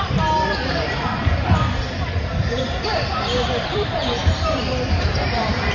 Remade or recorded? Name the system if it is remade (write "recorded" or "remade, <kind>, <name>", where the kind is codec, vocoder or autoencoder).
remade, vocoder, BigVGAN v2